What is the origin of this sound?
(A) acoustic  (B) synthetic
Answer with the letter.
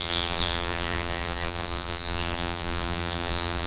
B